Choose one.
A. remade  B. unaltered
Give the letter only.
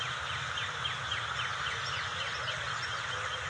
B